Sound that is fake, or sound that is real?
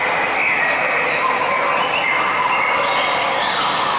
real